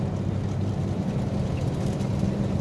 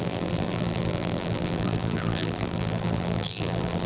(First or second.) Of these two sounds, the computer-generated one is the second